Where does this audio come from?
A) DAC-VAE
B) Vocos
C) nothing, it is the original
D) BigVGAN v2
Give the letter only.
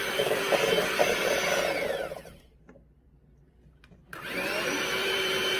D